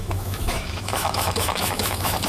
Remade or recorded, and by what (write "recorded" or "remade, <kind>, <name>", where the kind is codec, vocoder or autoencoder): remade, autoencoder, DAC-VAE